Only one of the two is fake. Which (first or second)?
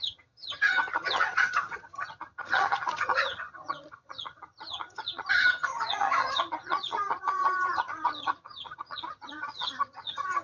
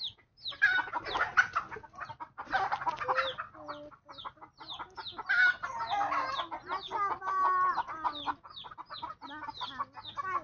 first